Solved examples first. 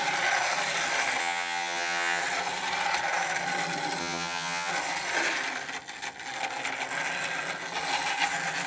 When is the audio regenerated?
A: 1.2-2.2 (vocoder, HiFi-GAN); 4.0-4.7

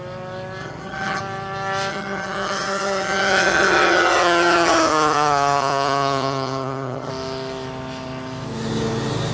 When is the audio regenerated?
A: 0.6-1.2 (vocoder, HiFi-GAN); 1.9-7.1

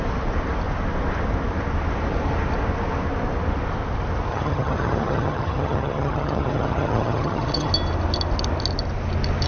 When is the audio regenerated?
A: 4.3-7.7 (vocoder, HiFi-GAN)

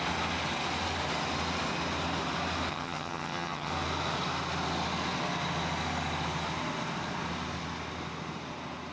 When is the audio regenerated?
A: 2.7-3.7 (vocoder, HiFi-GAN)

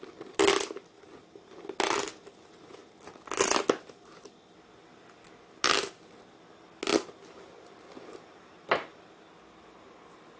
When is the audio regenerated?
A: none